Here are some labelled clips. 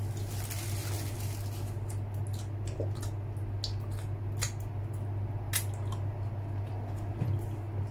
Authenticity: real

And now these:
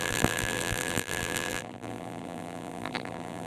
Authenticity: fake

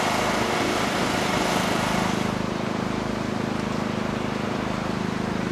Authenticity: real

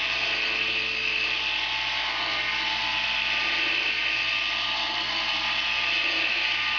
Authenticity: real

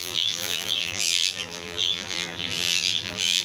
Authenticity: fake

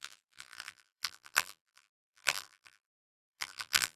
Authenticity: fake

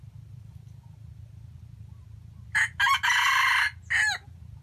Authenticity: real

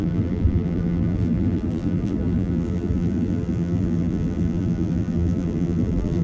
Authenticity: fake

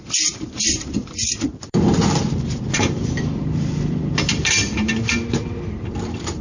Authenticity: fake